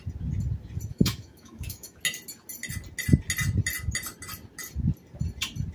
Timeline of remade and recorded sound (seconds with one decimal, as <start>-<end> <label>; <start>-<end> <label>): 0.0-0.9 recorded; 0.9-2.0 remade; 2.0-5.7 recorded